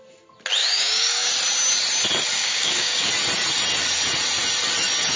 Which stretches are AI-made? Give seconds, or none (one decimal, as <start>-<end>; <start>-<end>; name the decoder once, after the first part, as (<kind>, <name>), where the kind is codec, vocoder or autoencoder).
0.6-1.3 (codec, DAC); 2.4-3.1